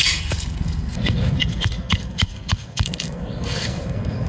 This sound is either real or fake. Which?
fake